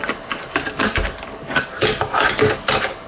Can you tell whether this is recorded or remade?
recorded